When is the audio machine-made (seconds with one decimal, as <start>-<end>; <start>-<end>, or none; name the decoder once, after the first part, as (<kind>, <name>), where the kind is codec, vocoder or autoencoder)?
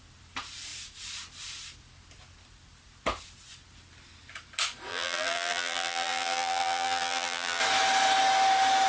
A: 4.9-7.6 (vocoder, BigVGAN v2)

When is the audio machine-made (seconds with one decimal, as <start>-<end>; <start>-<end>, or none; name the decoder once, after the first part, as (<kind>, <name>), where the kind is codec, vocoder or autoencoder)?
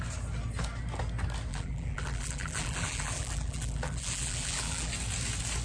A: 1.5-4.9 (vocoder, BigVGAN v2)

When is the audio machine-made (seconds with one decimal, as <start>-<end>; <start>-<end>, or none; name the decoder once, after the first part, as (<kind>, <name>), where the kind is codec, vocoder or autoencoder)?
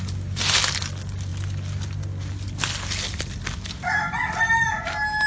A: none